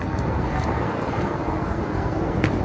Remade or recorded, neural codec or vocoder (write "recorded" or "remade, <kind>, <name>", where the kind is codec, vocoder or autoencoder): remade, codec, SNAC